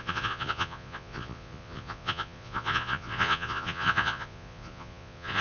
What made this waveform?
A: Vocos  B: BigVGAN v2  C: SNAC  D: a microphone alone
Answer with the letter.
A